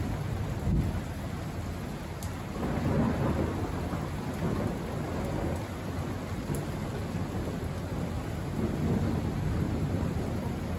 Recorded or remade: recorded